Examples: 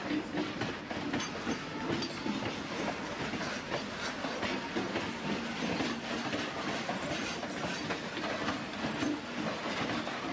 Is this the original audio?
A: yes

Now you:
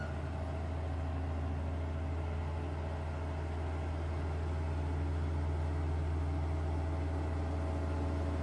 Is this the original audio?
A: yes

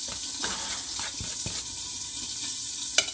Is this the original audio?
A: yes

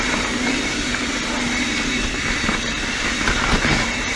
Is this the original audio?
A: yes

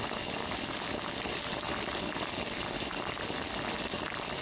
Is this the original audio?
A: yes